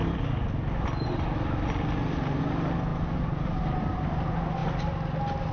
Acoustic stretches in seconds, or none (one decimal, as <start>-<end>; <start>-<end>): 0.0-2.9; 4.1-5.5